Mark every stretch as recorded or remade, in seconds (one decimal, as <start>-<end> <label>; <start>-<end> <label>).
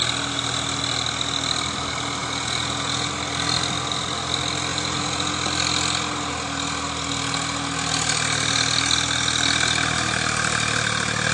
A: 0.0-2.2 recorded; 2.2-3.1 remade; 3.1-4.7 recorded; 4.7-5.4 remade; 5.4-11.3 recorded